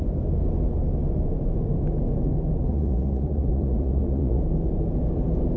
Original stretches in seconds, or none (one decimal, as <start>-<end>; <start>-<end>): 0.0-2.7; 4.4-5.6